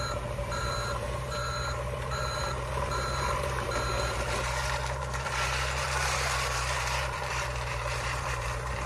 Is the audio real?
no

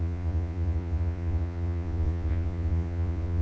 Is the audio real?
no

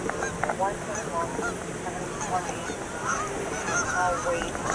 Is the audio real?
yes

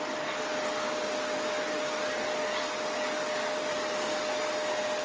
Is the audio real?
yes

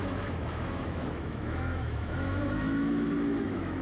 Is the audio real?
no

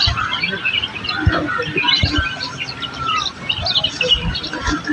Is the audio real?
yes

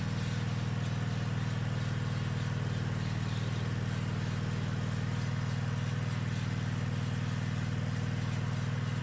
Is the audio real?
yes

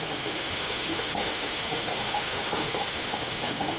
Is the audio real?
no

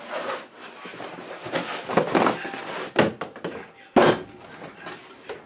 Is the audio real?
yes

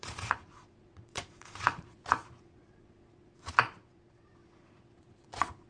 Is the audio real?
no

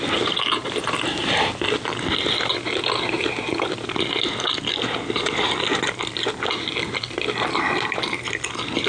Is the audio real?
yes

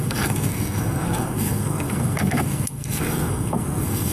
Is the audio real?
no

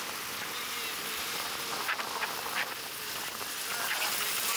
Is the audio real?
yes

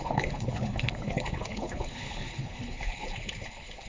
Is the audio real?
no